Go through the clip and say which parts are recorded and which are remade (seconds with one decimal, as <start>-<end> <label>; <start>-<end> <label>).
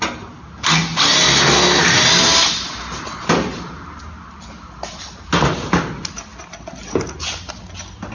0.0-8.1 recorded